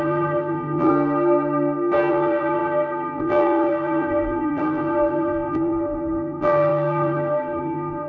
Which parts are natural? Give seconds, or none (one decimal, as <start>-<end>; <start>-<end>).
0.9-2.1